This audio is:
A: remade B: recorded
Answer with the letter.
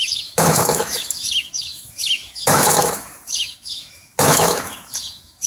A